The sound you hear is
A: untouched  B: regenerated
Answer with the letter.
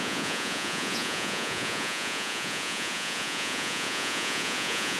B